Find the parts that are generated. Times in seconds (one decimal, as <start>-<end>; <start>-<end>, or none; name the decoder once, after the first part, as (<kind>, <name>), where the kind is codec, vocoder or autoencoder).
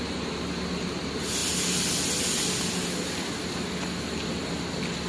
none